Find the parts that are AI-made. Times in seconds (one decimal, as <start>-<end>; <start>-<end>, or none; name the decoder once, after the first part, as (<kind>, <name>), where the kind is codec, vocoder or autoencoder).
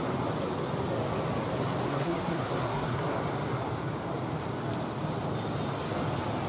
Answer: 1.9-3.0 (codec, SNAC)